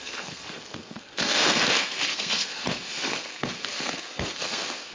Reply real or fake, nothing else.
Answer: fake